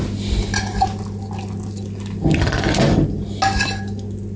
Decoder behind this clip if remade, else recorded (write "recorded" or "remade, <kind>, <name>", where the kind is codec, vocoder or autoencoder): recorded